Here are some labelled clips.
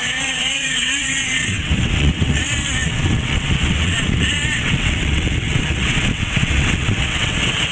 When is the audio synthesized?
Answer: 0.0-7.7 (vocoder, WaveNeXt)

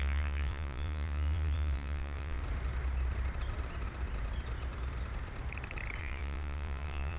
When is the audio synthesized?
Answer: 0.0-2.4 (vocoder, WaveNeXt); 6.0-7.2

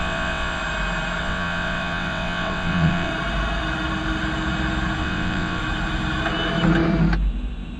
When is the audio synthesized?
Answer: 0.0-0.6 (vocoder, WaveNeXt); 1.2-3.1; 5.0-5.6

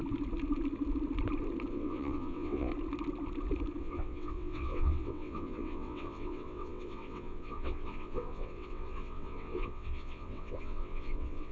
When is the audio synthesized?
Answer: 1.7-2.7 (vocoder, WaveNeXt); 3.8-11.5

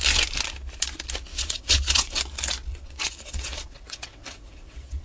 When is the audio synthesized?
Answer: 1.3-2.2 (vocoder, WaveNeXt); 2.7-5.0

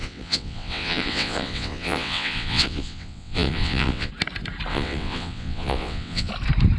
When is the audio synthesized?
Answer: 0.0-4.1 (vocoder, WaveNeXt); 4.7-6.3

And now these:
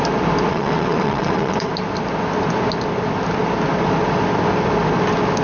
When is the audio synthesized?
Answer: 0.5-1.7 (vocoder, WaveNeXt)